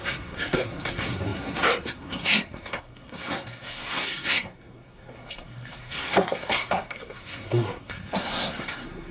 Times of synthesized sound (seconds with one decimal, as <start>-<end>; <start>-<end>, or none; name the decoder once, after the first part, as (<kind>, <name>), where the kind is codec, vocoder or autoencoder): 0.0-9.1 (codec, SNAC)

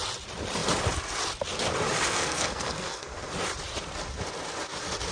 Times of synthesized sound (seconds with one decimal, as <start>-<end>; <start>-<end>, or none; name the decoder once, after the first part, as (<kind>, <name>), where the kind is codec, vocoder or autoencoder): 2.1-3.3 (codec, SNAC)

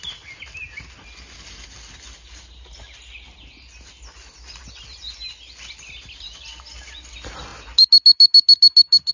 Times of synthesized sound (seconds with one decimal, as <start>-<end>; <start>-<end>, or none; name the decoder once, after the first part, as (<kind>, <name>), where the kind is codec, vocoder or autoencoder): none